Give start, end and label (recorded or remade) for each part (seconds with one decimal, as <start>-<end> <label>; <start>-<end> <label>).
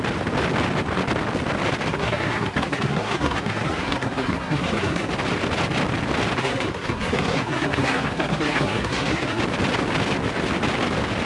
0.0-1.9 recorded; 1.9-5.1 remade; 5.1-6.4 recorded; 6.4-9.4 remade; 9.4-11.3 recorded